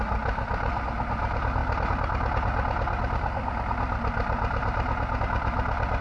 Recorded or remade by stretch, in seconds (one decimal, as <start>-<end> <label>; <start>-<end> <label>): 0.0-6.0 recorded